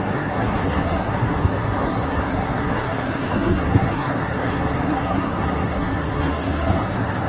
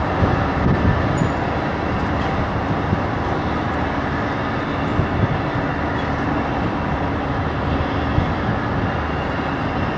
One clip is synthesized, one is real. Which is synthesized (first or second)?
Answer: first